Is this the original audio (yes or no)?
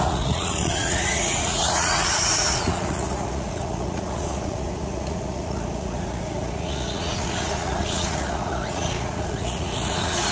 no